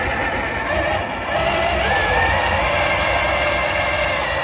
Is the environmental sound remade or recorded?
recorded